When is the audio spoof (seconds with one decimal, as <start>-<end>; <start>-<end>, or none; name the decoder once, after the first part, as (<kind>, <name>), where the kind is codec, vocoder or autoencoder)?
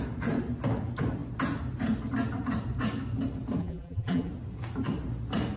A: 3.6-4.3 (vocoder, BigVGAN v2)